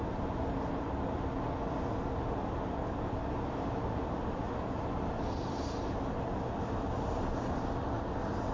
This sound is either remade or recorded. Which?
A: recorded